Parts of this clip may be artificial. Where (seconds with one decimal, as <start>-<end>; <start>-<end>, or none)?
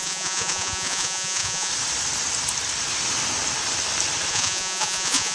0.0-1.7; 4.3-5.3